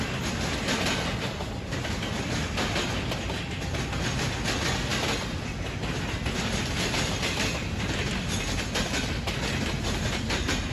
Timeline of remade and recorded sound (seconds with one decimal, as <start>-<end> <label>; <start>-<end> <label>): 0.0-10.7 recorded

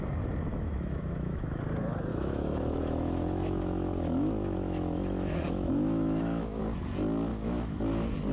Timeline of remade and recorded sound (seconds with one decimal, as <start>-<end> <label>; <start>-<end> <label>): 0.0-0.5 recorded; 0.5-1.6 remade; 1.6-2.1 recorded; 2.1-6.6 remade; 6.6-7.3 recorded; 7.3-7.8 remade; 7.8-8.3 recorded

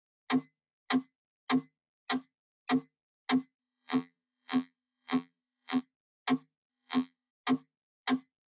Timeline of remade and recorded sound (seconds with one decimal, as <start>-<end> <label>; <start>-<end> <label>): 0.0-3.6 recorded; 3.6-5.8 remade; 5.8-6.7 recorded; 6.7-7.3 remade; 7.3-8.5 recorded

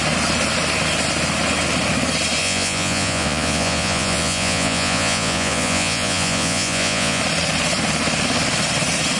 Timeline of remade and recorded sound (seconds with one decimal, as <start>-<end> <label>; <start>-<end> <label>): 0.0-2.4 recorded; 2.4-7.2 remade; 7.2-9.2 recorded

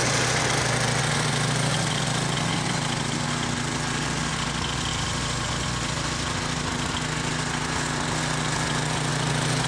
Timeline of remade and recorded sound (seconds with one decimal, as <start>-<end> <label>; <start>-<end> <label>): 0.0-9.7 recorded

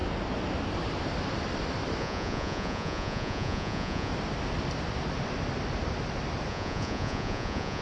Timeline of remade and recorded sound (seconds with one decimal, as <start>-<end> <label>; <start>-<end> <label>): 0.0-2.0 recorded; 2.0-4.1 remade; 4.1-6.5 recorded; 6.5-7.8 remade